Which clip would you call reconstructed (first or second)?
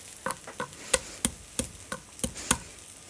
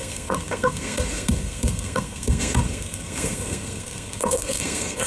second